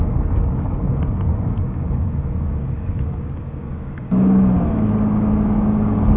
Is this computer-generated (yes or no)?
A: yes